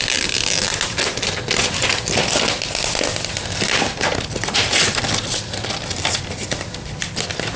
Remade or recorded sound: recorded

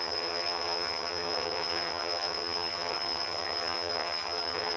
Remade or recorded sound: remade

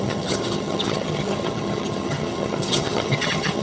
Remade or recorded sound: remade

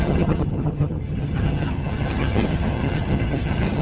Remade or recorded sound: remade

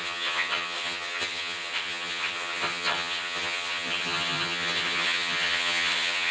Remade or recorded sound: remade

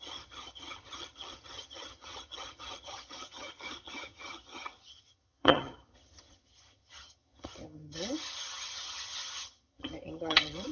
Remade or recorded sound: remade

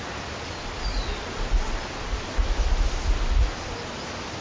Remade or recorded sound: recorded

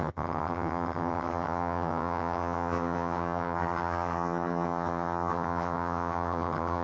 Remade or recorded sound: remade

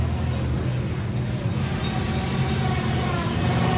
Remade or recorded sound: recorded